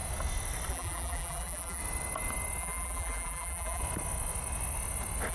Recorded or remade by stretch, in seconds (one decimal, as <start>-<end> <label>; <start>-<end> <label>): 0.0-0.7 recorded; 0.7-1.8 remade; 1.8-2.6 recorded; 2.6-3.8 remade; 3.8-5.3 recorded